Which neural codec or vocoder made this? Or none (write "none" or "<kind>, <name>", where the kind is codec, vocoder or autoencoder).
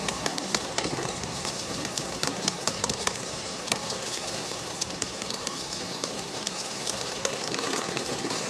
codec, SNAC